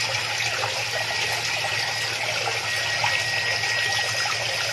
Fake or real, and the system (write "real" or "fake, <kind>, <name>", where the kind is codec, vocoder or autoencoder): real